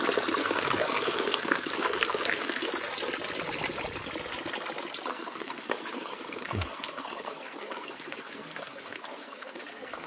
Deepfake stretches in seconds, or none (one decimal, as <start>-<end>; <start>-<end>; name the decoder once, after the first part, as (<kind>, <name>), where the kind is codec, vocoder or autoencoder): 0.4-2.7 (codec, SNAC); 5.1-10.1